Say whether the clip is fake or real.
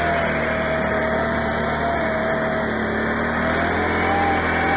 real